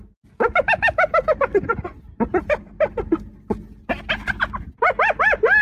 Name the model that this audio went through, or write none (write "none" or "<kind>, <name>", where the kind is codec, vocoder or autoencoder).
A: none